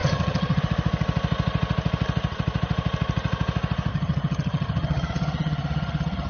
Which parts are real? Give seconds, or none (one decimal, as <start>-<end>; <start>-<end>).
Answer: 0.6-3.9